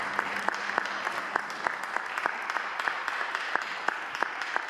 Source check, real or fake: real